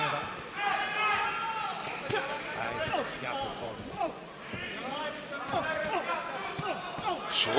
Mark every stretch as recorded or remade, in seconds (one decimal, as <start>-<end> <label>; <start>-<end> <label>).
0.0-3.5 recorded; 3.5-4.2 remade; 4.2-7.6 recorded